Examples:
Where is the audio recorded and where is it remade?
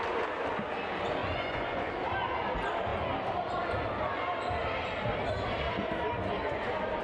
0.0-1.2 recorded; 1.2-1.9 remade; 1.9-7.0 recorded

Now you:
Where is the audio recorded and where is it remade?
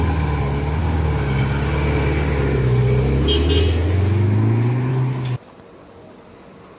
0.0-6.8 recorded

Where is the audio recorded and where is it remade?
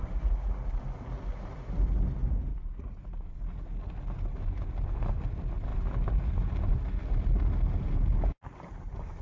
0.0-2.5 recorded; 2.5-3.4 remade; 3.4-9.2 recorded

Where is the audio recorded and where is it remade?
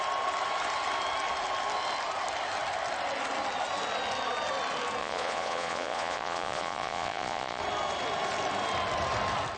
0.0-5.0 recorded; 5.0-7.6 remade; 7.6-9.6 recorded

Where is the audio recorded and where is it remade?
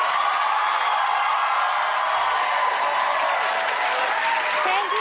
0.0-5.0 recorded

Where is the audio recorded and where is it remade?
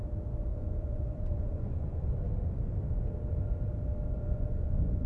0.0-0.5 recorded; 0.5-2.2 remade; 2.2-4.1 recorded; 4.1-5.1 remade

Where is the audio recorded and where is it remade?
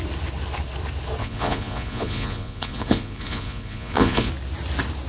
0.0-1.2 recorded; 1.2-4.3 remade; 4.3-5.1 recorded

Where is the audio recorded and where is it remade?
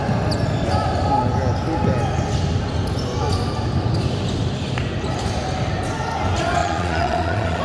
0.0-6.6 recorded; 6.6-7.6 remade